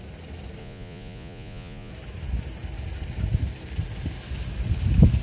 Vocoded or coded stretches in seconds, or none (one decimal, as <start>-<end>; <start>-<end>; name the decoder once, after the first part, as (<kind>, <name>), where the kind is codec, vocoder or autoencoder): 0.6-1.9 (vocoder, Vocos)